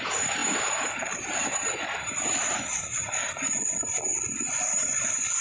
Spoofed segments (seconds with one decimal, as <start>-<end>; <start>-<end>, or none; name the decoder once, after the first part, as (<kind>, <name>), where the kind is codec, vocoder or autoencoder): 0.0-4.1 (vocoder, BigVGAN v2); 4.6-5.4